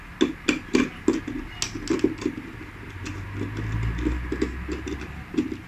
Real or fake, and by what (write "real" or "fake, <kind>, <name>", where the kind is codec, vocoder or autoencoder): real